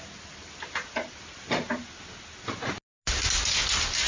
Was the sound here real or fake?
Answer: real